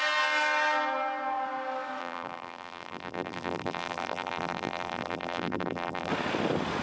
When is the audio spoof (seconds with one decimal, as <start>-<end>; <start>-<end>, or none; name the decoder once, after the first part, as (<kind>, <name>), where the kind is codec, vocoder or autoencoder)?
2.0-6.1 (vocoder, BigVGAN v2)